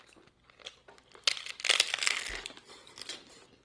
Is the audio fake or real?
real